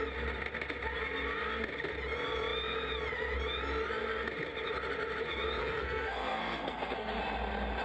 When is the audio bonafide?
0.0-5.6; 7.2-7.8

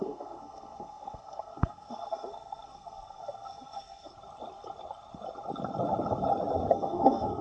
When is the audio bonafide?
4.1-6.7

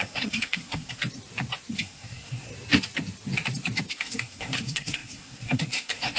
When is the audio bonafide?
1.0-1.7; 2.5-3.9

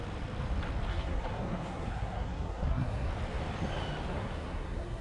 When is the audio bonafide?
0.0-0.9; 3.1-4.1

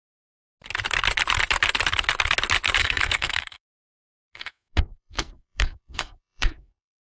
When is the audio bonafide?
0.0-2.8

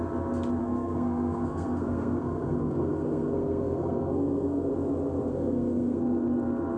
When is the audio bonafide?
0.0-0.6; 4.7-5.3; 6.0-6.8